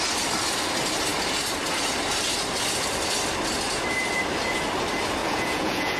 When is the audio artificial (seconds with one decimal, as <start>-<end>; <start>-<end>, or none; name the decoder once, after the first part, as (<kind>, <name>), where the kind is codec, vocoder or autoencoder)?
5.2-6.0 (vocoder, Vocos)